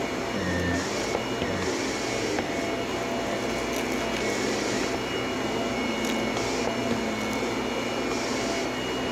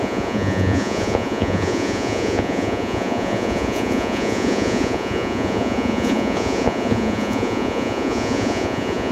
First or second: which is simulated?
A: second